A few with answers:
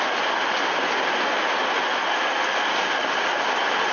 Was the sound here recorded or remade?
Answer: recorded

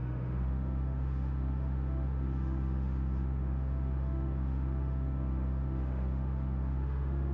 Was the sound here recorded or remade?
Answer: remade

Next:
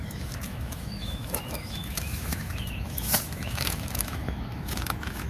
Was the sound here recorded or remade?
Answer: remade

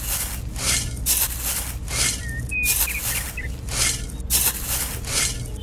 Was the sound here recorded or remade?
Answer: recorded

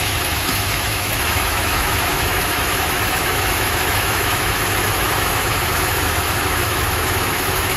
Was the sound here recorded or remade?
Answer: remade